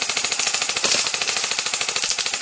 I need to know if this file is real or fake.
real